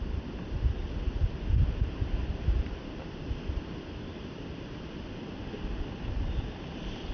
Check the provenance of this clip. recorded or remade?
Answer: remade